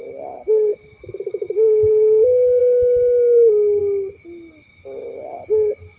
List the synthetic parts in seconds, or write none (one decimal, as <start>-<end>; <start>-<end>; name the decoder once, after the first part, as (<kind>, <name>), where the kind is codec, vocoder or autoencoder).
none